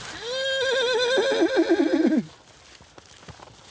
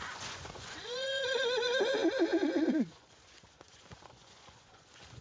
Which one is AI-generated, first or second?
second